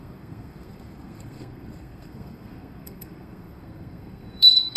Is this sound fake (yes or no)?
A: yes